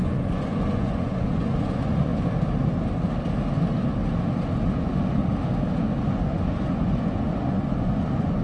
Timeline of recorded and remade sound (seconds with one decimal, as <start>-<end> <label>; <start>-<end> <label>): 0.0-2.1 remade; 2.1-4.8 recorded; 4.8-5.2 remade; 5.2-6.1 recorded; 6.1-8.4 remade